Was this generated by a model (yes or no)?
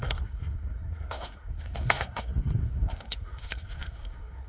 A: yes